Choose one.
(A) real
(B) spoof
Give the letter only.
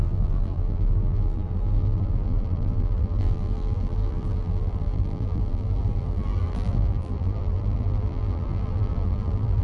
B